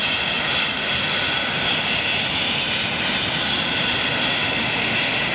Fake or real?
real